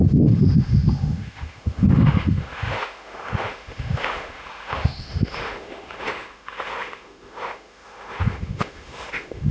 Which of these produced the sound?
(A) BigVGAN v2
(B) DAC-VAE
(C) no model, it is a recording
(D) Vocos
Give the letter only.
B